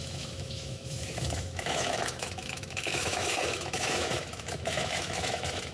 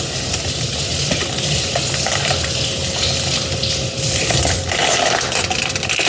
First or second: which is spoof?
first